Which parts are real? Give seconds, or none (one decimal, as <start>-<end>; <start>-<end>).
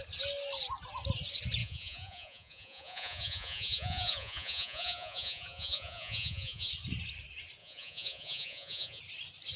0.0-1.6; 6.7-7.6; 9.0-9.6